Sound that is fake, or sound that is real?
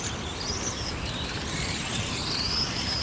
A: real